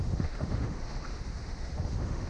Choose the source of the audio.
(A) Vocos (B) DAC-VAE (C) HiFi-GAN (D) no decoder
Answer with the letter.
B